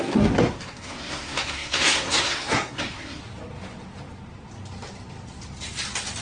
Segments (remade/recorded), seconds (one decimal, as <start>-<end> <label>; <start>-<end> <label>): 0.0-3.2 remade; 3.2-6.2 recorded